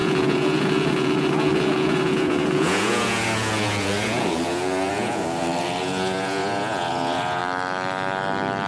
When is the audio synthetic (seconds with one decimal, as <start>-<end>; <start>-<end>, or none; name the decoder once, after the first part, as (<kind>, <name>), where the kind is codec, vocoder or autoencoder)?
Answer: 0.0-7.4 (vocoder, Vocos)